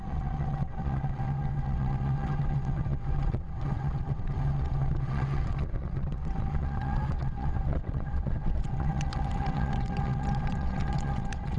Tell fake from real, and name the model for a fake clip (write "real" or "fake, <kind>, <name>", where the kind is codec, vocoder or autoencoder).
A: fake, vocoder, WaveNeXt